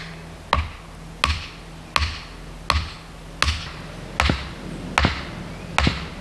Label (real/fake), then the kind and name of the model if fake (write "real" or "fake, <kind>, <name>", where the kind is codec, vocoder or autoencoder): real